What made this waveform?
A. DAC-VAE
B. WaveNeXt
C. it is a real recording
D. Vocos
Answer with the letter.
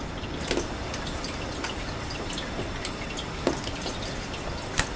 C